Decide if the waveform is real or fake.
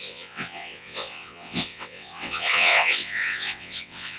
fake